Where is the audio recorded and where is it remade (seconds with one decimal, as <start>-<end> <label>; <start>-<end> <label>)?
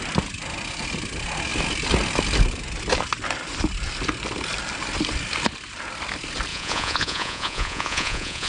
0.0-6.5 recorded; 6.5-8.5 remade